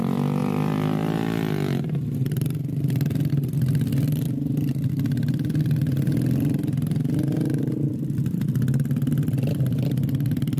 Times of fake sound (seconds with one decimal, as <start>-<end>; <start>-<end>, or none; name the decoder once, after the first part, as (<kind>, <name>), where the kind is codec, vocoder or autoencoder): none